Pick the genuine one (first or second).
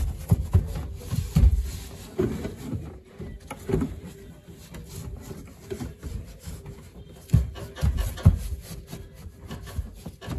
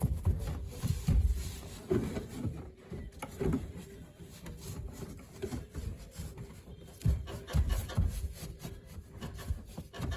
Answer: first